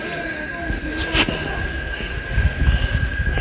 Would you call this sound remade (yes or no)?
no